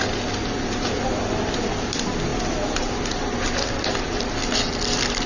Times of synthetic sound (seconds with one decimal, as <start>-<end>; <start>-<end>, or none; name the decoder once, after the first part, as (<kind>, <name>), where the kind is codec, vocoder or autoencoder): none